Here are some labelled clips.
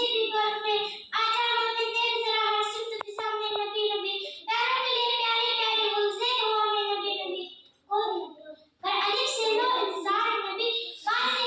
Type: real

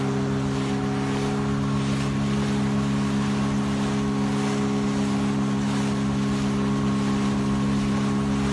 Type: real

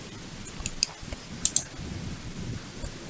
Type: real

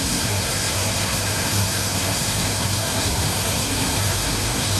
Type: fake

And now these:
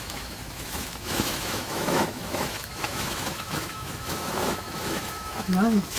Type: fake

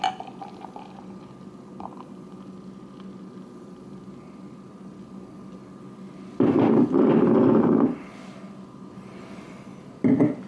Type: real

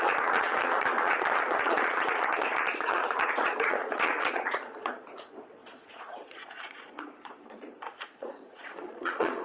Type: fake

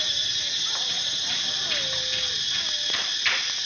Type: real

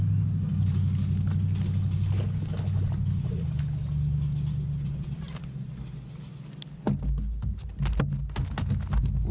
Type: real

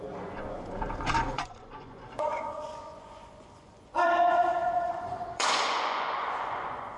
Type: fake